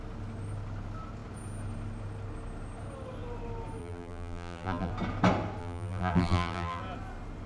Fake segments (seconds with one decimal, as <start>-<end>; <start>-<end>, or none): 3.8-4.9; 5.6-6.8